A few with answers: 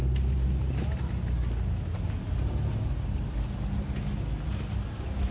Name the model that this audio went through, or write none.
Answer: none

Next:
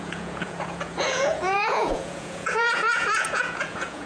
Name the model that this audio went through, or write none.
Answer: vocoder, Vocos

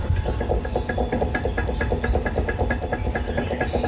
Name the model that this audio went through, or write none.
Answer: none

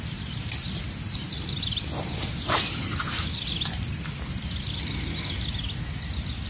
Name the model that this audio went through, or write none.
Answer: none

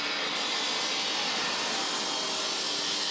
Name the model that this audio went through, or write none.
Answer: none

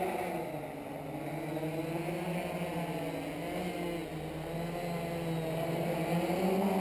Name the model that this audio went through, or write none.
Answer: none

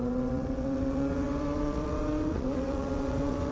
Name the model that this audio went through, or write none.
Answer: vocoder, WaveNeXt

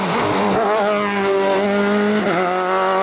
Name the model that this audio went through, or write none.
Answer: none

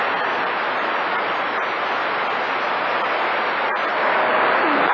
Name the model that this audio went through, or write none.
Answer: none